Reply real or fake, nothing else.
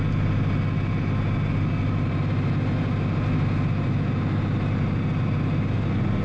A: real